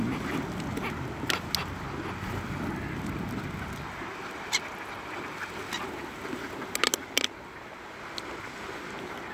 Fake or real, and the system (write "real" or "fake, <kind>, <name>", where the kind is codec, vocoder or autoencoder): real